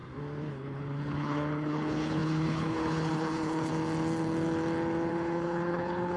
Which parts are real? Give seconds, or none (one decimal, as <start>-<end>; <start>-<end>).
0.0-0.5; 3.7-5.1